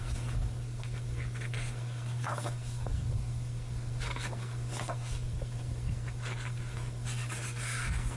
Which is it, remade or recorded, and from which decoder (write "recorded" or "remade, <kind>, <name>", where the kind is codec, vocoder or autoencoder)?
remade, codec, SNAC